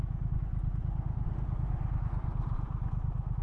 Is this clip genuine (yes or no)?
yes